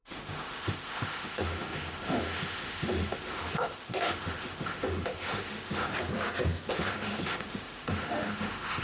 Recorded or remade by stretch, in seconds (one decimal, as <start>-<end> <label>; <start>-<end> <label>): 0.0-5.9 remade; 5.9-6.7 recorded; 6.7-8.8 remade